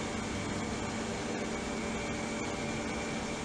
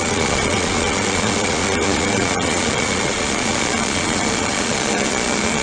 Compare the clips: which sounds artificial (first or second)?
second